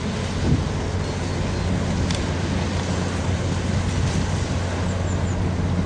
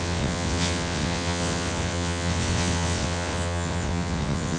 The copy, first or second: second